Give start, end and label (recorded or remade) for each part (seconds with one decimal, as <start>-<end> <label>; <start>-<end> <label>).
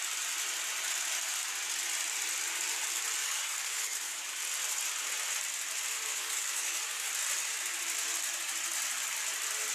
0.0-3.2 recorded; 3.2-4.2 remade; 4.2-6.1 recorded; 6.1-7.1 remade; 7.1-9.7 recorded